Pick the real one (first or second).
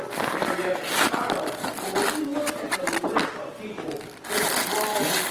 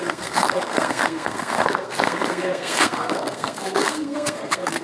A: first